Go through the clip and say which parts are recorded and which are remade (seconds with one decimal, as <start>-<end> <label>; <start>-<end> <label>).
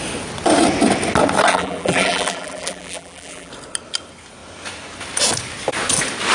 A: 0.0-1.5 recorded; 1.5-3.5 remade; 3.5-6.3 recorded